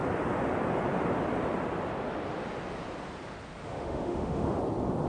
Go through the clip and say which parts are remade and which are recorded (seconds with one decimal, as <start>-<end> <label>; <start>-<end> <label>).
0.0-3.6 recorded; 3.6-4.6 remade; 4.6-5.1 recorded